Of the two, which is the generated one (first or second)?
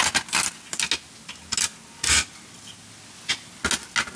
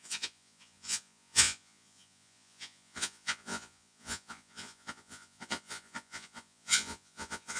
second